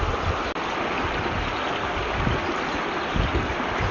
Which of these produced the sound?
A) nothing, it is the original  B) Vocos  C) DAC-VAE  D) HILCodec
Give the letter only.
A